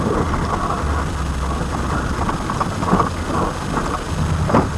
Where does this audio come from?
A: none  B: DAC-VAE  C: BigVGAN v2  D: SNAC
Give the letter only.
A